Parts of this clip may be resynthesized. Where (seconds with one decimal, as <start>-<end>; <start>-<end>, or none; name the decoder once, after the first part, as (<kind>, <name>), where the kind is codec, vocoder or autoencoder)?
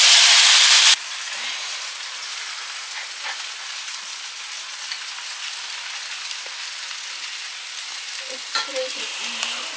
none